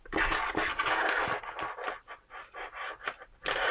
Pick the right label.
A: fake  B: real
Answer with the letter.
B